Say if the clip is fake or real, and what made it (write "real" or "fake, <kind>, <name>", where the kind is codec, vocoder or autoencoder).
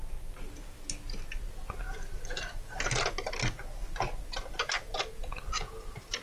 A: real